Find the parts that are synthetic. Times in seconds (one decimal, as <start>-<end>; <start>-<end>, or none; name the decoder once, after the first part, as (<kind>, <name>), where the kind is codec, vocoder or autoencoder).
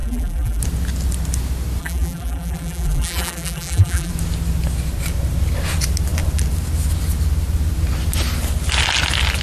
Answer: 0.0-0.6 (vocoder, BigVGAN v2); 1.8-4.1